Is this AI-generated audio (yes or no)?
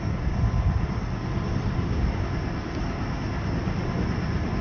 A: no